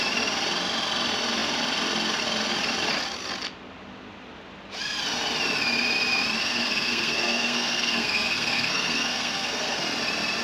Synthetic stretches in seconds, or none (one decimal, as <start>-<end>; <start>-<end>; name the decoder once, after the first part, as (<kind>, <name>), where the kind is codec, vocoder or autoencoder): 6.4-9.8 (codec, SNAC)